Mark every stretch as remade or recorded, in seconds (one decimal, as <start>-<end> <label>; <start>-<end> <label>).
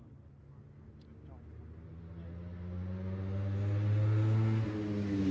0.0-5.3 recorded